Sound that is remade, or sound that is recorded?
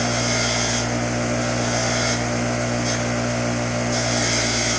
recorded